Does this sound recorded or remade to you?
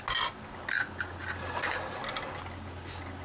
recorded